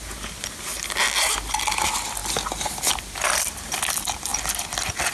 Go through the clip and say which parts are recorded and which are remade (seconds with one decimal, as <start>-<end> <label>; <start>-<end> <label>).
0.0-5.1 recorded